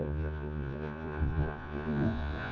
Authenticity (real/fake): fake